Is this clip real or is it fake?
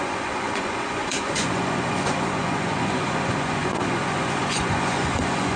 fake